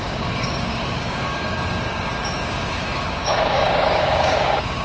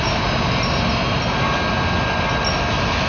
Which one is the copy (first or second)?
first